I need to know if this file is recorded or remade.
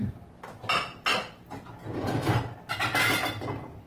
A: recorded